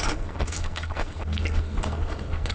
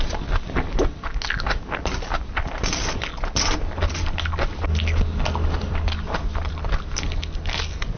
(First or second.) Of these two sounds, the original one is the second